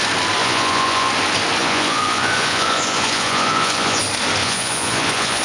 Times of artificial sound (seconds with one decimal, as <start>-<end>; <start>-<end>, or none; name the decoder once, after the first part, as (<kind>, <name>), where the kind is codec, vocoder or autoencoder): 0.4-1.1 (vocoder, Vocos); 1.6-4.0; 4.4-5.4